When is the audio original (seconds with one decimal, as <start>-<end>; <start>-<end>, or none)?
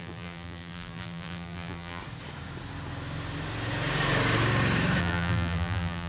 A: 2.0-5.0